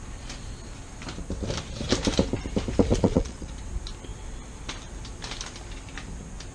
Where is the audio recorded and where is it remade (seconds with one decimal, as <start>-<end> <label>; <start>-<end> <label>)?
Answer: 0.0-2.9 recorded; 2.9-3.5 remade; 3.5-6.5 recorded